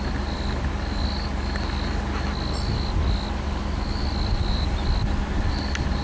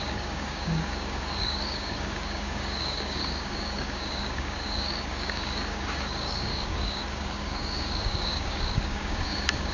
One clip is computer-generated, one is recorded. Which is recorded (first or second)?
first